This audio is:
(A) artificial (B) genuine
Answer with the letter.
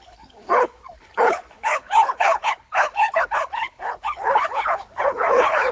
A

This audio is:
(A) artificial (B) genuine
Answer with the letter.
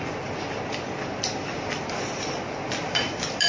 B